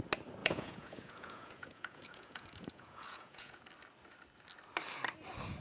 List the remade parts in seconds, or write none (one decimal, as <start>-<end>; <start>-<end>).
0.4-3.6